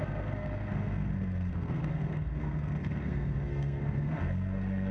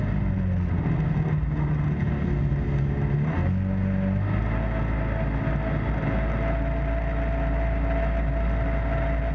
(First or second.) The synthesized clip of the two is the first